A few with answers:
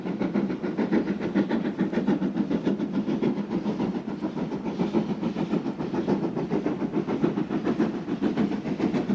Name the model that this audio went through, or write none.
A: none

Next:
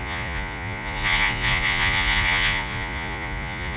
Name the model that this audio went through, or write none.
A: vocoder, Vocos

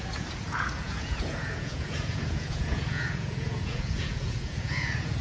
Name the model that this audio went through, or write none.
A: vocoder, Vocos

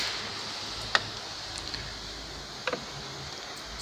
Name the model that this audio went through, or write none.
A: none